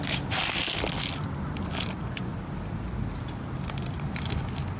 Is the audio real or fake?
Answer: real